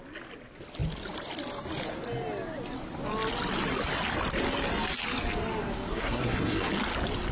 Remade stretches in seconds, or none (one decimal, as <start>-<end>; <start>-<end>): 5.9-6.7